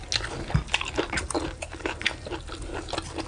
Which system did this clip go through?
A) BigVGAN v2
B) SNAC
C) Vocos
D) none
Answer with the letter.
D